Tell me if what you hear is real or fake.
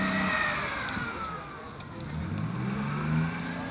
real